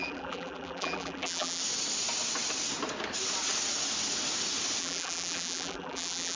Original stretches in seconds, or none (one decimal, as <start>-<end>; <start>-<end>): 1.6-4.8